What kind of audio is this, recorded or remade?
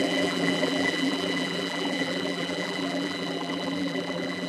remade